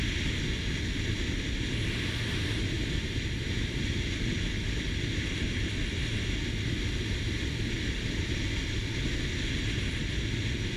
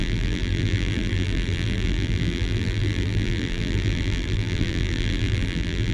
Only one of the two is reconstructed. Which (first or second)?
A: second